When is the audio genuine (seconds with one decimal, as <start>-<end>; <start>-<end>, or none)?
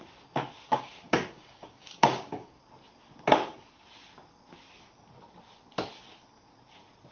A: 0.0-0.7; 2.6-7.1